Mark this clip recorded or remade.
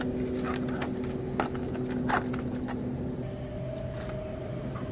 recorded